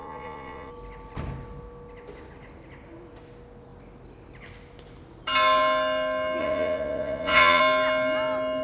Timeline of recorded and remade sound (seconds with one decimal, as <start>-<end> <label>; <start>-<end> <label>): 0.0-0.7 remade; 0.7-6.4 recorded; 6.4-7.6 remade; 7.6-8.6 recorded